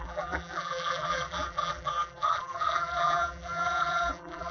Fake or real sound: fake